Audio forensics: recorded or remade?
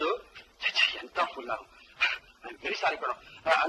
recorded